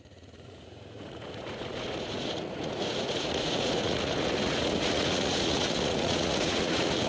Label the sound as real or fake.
fake